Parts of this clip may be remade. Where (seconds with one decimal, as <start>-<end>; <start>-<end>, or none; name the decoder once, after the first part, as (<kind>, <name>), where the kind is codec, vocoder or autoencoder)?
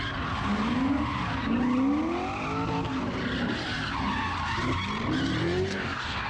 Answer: 5.4-6.3 (codec, DAC)